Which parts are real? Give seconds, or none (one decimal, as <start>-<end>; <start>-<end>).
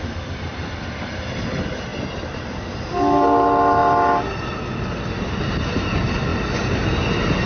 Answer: 0.0-0.5; 1.2-7.5